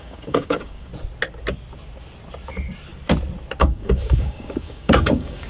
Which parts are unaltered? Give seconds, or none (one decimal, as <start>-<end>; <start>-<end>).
0.9-3.6